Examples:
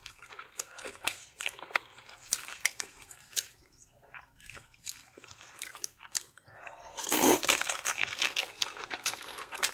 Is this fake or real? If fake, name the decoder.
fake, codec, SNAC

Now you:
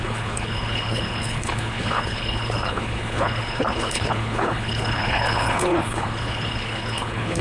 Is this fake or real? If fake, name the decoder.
fake, codec, HILCodec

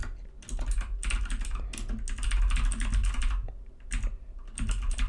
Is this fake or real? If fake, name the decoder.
real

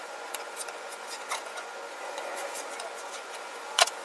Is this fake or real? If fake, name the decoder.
fake, vocoder, Vocos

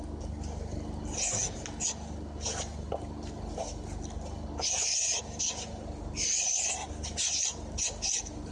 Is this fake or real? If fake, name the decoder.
real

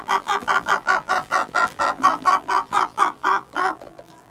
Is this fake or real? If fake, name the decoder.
fake, vocoder, BigVGAN v2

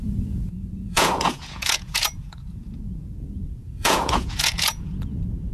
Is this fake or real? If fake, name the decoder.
fake, vocoder, Vocos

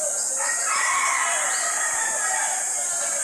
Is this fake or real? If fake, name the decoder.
real